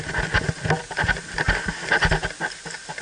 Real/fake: real